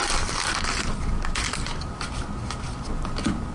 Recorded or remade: recorded